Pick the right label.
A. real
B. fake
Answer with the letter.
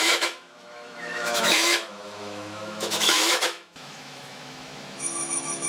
B